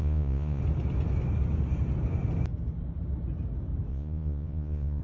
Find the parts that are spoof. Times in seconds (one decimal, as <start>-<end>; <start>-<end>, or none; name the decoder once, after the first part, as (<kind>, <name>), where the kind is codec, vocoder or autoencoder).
0.0-0.6 (vocoder, Vocos); 3.9-5.0